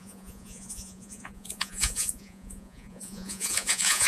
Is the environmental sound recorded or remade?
remade